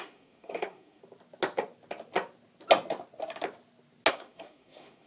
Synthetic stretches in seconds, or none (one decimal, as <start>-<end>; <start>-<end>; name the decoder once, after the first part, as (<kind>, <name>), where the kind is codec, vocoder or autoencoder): 0.0-1.0 (codec, SNAC); 4.1-5.1